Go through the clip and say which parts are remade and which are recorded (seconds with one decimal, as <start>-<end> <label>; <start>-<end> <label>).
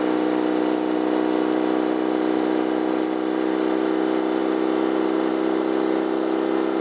0.0-6.8 recorded